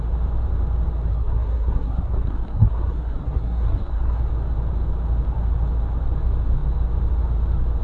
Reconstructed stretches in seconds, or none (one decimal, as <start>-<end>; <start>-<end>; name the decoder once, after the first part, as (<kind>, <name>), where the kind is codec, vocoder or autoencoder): 1.1-4.2 (codec, SNAC)